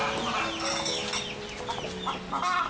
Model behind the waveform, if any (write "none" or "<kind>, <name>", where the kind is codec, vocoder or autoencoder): none